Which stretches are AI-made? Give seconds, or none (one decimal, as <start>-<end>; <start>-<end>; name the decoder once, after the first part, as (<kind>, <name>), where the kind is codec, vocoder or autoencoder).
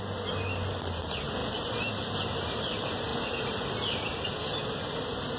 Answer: none